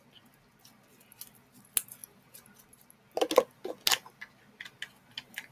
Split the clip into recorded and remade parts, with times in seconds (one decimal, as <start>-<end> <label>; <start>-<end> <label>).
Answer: 0.0-5.5 recorded